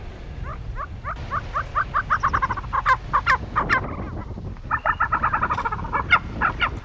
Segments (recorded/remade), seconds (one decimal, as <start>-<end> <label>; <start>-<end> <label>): 0.0-6.8 recorded